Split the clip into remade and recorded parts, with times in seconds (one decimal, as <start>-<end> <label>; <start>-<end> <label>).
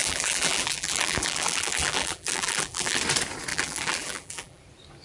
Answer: 0.0-3.0 remade; 3.0-3.5 recorded; 3.5-4.6 remade; 4.6-5.0 recorded